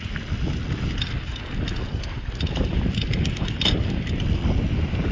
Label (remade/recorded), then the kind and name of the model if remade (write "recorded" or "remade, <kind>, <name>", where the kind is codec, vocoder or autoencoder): recorded